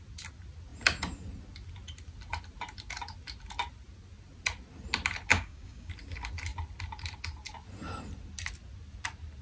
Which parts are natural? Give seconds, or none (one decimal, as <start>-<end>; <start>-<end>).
0.0-5.3; 5.9-9.4

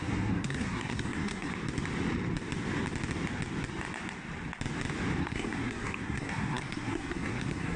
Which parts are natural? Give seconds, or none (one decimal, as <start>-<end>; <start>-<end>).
1.5-5.2

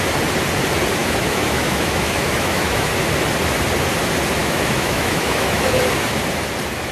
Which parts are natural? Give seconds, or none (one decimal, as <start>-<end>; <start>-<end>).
0.0-1.0; 2.9-4.4; 5.8-6.9

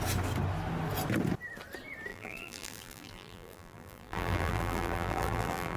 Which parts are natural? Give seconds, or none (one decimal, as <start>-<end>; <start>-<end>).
0.0-2.1